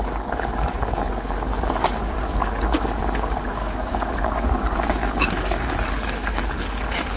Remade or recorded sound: remade